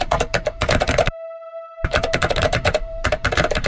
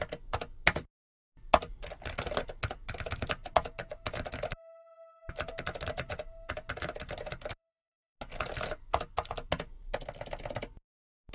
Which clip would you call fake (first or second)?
first